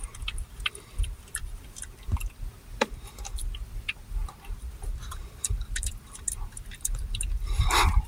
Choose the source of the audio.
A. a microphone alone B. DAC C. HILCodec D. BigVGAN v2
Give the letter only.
D